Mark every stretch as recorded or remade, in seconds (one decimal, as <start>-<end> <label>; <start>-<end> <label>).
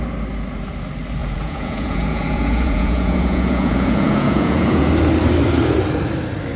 0.0-1.2 recorded; 1.2-4.9 remade; 4.9-6.6 recorded